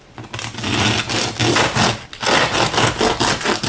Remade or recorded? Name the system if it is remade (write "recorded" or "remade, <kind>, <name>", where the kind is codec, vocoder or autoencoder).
recorded